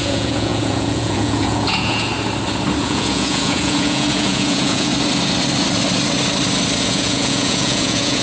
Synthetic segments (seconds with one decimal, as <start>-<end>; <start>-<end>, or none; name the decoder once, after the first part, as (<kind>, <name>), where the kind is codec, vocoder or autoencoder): 0.0-2.1 (vocoder, Vocos); 2.8-4.9; 6.8-8.2

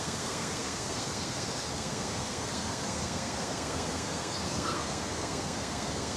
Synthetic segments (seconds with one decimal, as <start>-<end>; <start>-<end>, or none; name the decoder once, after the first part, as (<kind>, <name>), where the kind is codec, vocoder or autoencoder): 0.0-6.2 (codec, SNAC)

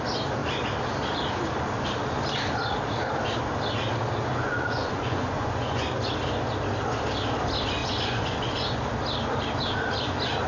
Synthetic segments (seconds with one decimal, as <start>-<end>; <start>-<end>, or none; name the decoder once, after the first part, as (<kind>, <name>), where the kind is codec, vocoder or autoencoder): 4.3-6.1 (vocoder, Vocos); 7.8-8.8

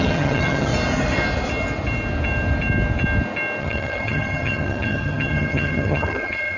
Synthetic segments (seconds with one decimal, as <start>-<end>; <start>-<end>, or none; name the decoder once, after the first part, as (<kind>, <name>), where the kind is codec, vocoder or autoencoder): 0.0-0.7 (vocoder, HiFi-GAN); 3.6-6.6

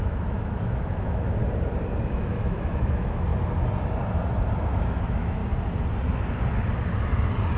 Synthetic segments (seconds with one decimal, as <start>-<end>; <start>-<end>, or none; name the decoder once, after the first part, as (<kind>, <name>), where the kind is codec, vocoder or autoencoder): 0.0-1.4 (autoencoder, DAC-VAE); 2.0-3.3; 4.8-5.4

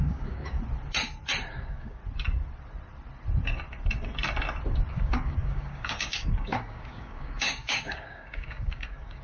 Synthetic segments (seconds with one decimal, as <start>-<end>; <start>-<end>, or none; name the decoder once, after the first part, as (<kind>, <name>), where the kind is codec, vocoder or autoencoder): 0.0-0.6 (codec, DAC); 1.6-2.0; 4.9-9.2

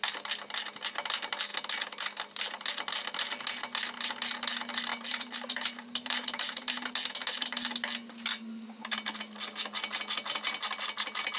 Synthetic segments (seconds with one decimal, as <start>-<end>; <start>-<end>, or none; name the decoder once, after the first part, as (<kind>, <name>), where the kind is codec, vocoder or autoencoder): 4.9-6.9 (vocoder, BigVGAN v2)